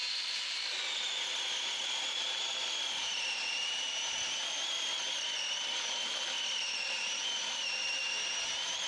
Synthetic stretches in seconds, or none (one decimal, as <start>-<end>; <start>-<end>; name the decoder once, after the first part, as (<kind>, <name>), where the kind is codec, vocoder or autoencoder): 0.0-0.6 (vocoder, BigVGAN v2)